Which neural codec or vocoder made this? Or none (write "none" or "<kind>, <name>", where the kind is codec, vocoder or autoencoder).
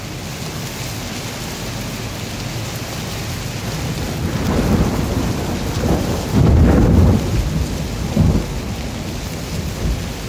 none